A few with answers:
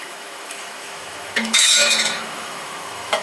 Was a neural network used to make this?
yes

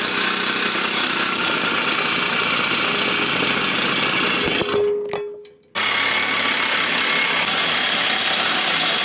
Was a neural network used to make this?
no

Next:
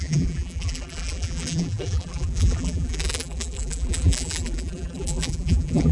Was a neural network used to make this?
yes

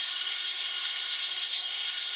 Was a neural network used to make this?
yes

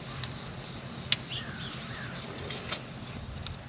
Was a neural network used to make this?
no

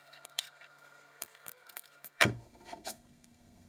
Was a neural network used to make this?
yes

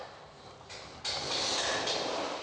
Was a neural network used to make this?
no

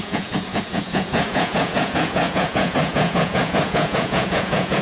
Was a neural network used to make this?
yes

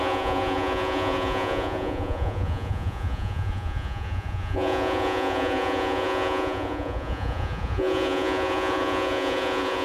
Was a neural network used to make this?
yes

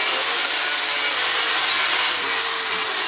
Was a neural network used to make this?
no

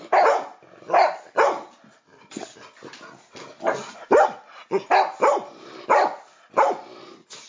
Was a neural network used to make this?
no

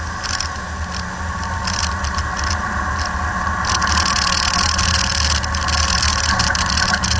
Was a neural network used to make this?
no